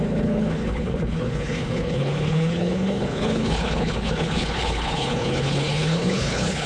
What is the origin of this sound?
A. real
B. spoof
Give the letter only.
B